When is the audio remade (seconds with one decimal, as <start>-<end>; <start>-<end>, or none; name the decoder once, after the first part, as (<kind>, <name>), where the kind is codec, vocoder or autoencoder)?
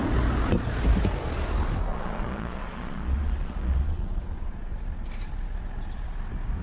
1.9-4.6 (vocoder, Vocos)